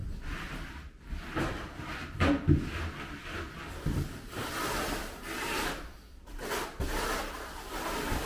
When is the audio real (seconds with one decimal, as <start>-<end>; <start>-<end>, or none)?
0.0-8.3